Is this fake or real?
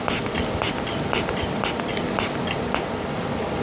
real